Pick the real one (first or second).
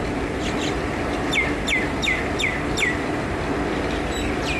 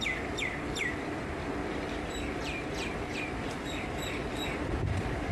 first